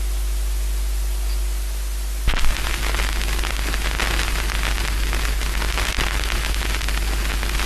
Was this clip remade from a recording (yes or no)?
no